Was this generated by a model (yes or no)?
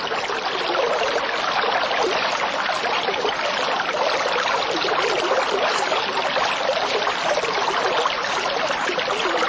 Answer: no